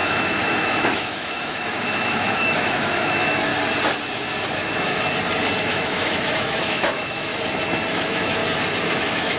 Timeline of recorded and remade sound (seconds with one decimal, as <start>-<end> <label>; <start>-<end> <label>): 0.0-3.5 remade; 3.5-5.6 recorded; 5.6-7.3 remade; 7.3-7.9 recorded; 7.9-8.4 remade; 8.4-9.0 recorded; 9.0-9.4 remade